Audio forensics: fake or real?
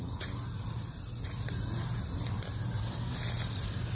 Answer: real